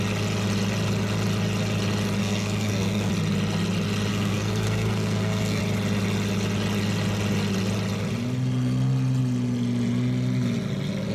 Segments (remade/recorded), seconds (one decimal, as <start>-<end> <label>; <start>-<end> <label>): 0.0-2.2 recorded; 2.2-3.1 remade; 3.1-4.1 recorded; 4.1-5.6 remade; 5.6-11.1 recorded